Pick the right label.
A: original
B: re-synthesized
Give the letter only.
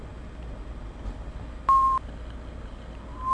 A